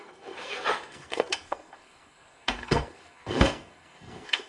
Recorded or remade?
remade